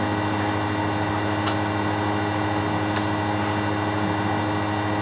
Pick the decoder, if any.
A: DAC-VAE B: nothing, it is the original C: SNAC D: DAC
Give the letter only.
B